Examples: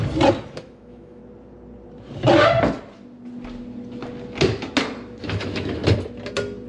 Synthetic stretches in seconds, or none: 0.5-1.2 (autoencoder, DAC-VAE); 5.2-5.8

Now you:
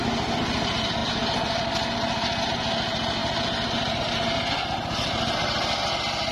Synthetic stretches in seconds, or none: none

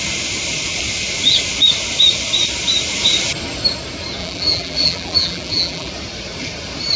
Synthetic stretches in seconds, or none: 4.2-5.9 (vocoder, BigVGAN v2)

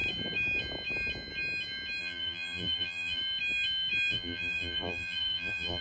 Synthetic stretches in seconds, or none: 2.0-3.2 (vocoder, BigVGAN v2); 4.1-5.8

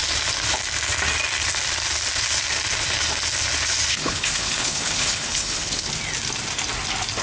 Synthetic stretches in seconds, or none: 3.9-5.9 (codec, HILCodec)

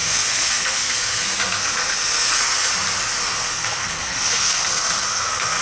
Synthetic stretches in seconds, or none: 0.0-2.7 (codec, SNAC); 3.2-5.6

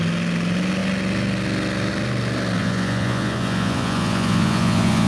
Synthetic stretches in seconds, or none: 2.6-5.1 (vocoder, Vocos)